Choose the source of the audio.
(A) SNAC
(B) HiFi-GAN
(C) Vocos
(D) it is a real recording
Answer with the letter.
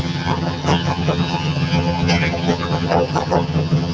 B